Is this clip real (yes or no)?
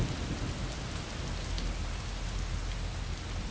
yes